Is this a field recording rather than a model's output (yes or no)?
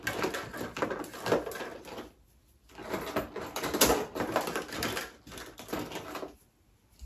yes